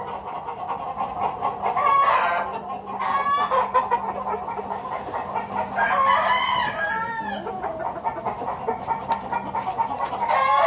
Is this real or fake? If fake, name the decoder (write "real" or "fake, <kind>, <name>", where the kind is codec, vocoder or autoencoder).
real